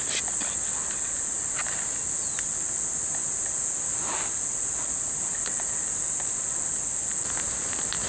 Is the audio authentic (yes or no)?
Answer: yes